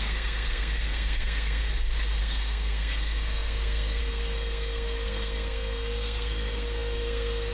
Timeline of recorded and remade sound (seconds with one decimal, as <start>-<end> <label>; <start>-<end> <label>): 0.0-1.6 remade; 1.6-2.2 recorded; 2.2-7.5 remade